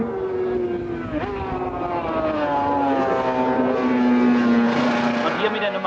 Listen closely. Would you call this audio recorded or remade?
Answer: recorded